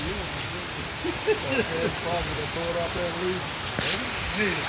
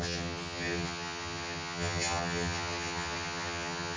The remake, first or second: second